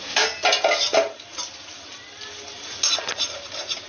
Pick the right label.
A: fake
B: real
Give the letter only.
B